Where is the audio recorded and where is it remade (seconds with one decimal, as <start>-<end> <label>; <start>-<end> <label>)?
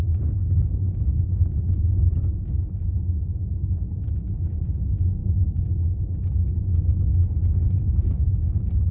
0.0-0.4 recorded; 0.4-1.8 remade; 1.8-8.9 recorded